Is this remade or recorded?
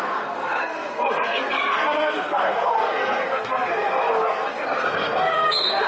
remade